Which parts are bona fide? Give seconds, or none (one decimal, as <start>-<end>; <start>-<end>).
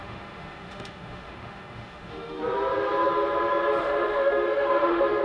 2.4-3.8